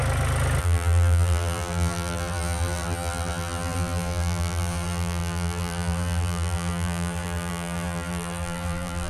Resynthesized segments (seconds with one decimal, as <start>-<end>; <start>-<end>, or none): 0.6-9.1